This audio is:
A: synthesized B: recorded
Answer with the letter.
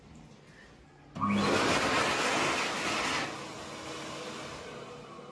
B